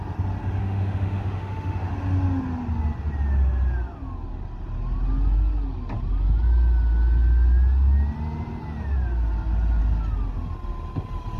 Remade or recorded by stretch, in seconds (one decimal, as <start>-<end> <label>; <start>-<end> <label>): 0.0-0.6 recorded; 0.6-1.9 remade; 1.9-11.4 recorded